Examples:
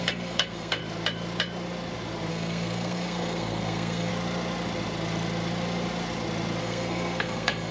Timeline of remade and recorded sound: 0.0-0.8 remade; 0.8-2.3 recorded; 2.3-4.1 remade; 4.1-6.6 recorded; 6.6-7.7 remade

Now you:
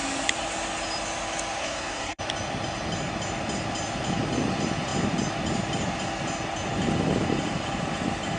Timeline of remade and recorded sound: 0.0-1.6 recorded; 1.6-2.2 remade; 2.2-8.4 recorded

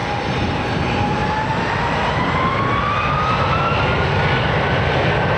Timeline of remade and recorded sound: 0.0-5.4 recorded

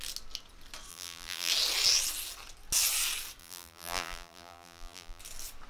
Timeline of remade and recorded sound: 0.0-0.9 recorded; 0.9-1.5 remade; 1.5-3.4 recorded; 3.4-5.2 remade; 5.2-5.7 recorded

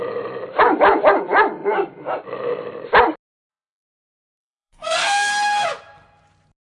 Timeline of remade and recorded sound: 0.0-3.5 recorded; 3.5-5.3 remade; 5.3-6.6 recorded